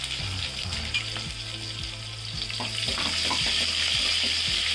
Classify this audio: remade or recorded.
recorded